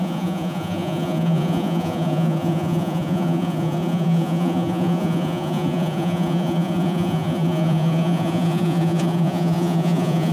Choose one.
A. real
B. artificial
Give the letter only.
B